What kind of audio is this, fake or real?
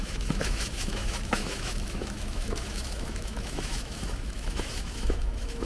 fake